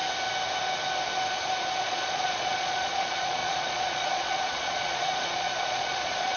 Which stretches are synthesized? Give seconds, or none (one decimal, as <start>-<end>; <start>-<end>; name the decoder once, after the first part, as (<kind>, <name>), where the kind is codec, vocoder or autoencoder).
1.8-6.4 (vocoder, Vocos)